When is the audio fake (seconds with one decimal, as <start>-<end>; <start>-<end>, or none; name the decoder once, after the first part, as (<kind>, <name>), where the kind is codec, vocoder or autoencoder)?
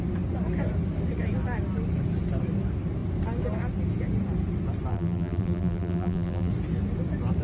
4.9-6.5 (vocoder, BigVGAN v2)